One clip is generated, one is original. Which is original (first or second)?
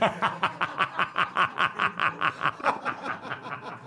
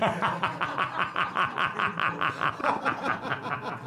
second